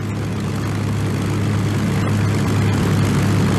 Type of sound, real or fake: real